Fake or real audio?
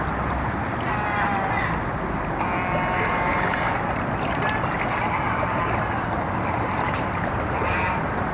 real